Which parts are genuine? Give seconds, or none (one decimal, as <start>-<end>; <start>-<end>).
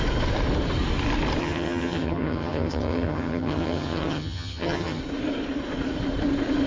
0.0-1.4; 5.0-6.7